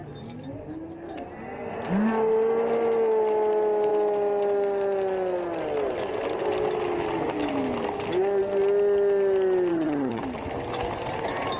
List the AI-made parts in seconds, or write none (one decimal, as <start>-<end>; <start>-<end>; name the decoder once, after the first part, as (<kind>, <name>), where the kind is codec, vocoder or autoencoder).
9.7-10.2 (vocoder, HiFi-GAN)